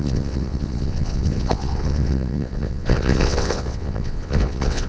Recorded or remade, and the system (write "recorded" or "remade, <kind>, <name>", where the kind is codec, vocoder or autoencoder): remade, vocoder, WaveNeXt